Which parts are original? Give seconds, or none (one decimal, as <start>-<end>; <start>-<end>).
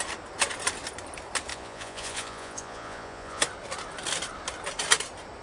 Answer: 0.0-1.5; 3.4-5.4